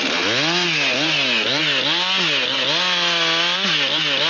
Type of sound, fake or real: real